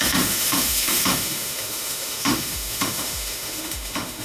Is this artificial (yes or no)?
yes